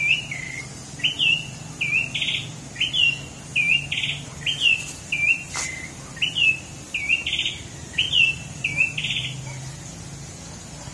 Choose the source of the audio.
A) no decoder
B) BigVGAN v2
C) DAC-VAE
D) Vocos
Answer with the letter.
A